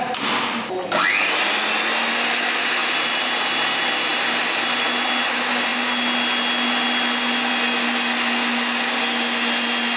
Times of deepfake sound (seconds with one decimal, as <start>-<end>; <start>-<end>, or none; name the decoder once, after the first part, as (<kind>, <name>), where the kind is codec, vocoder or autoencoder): 2.8-3.5 (vocoder, BigVGAN v2)